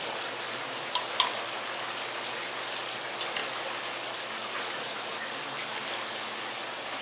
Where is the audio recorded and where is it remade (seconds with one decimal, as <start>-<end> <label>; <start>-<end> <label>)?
0.0-7.0 recorded